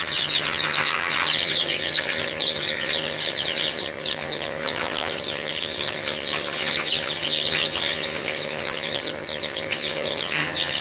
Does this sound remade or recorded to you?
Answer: remade